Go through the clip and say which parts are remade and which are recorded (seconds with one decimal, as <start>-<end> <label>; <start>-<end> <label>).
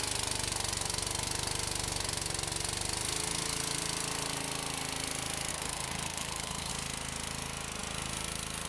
0.0-5.5 recorded; 5.5-6.7 remade; 6.7-8.7 recorded